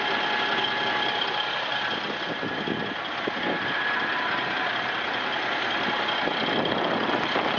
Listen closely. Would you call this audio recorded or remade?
recorded